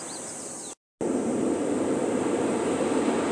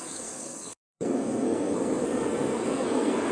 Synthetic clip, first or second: second